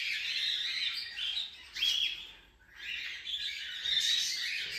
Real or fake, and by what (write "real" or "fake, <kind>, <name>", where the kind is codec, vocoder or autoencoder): real